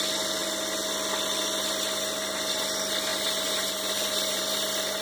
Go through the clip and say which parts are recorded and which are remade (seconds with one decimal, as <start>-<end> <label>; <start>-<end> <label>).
0.0-3.1 recorded; 3.1-4.4 remade; 4.4-5.0 recorded